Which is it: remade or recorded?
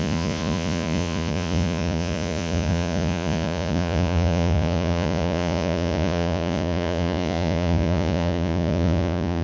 remade